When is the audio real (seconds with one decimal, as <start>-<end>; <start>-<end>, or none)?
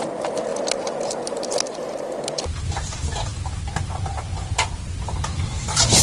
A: 0.0-6.0